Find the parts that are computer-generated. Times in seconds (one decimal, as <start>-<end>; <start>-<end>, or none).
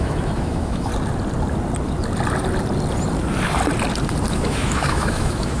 0.0-0.9; 4.3-5.6